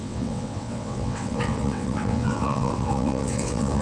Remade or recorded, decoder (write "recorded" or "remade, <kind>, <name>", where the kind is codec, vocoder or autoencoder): remade, vocoder, WaveNeXt